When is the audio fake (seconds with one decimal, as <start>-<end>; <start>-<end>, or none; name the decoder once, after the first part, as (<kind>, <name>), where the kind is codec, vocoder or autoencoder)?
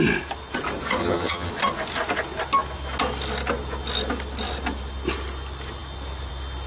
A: 1.0-1.5 (vocoder, HiFi-GAN)